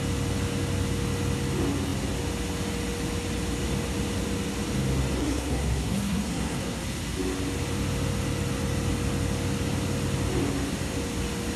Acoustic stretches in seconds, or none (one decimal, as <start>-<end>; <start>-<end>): 0.0-5.2; 6.8-11.6